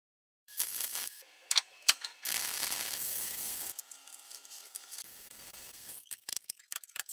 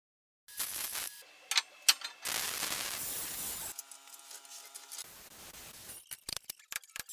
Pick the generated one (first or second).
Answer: first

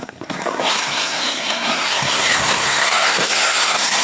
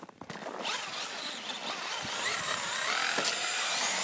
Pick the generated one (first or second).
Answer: first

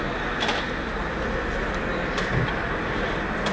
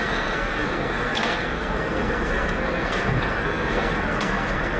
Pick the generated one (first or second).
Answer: second